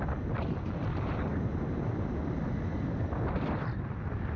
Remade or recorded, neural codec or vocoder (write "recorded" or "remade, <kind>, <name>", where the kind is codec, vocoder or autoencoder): recorded